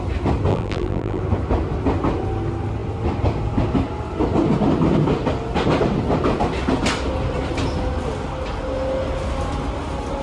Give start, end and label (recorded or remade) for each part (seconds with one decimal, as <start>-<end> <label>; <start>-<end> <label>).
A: 0.0-0.5 recorded; 0.5-1.2 remade; 1.2-10.2 recorded